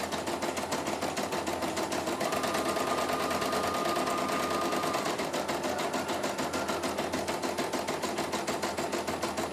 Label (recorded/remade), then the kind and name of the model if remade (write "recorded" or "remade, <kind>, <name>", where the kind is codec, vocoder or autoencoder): recorded